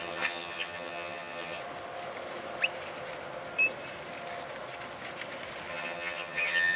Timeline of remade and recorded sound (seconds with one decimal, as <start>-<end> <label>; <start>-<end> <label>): 0.0-1.6 remade; 1.6-5.7 recorded; 5.7-6.8 remade